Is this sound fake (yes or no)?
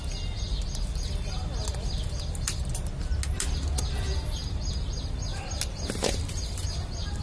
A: no